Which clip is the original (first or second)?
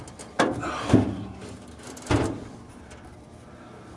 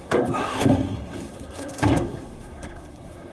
first